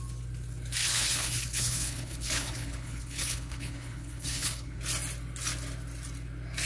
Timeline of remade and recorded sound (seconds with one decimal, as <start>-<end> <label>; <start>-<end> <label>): 0.0-0.8 recorded; 0.8-4.8 remade; 4.8-6.7 recorded